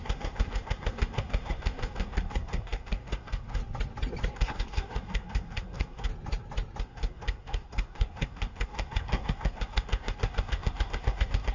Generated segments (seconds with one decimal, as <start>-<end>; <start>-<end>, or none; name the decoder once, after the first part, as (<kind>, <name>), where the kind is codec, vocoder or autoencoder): 0.0-3.6 (codec, SNAC); 4.3-6.1; 6.8-11.5